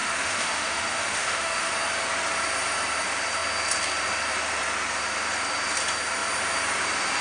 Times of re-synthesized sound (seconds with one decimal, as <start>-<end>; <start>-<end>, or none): 0.0-1.7